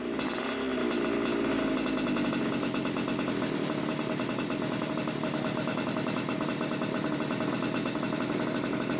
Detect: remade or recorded recorded